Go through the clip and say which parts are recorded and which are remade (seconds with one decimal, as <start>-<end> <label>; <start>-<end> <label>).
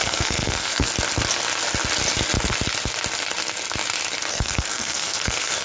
0.0-0.9 remade; 0.9-4.3 recorded; 4.3-5.6 remade